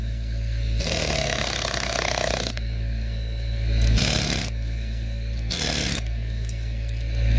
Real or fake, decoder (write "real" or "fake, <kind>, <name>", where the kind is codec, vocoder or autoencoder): fake, codec, SNAC